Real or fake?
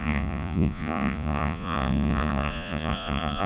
fake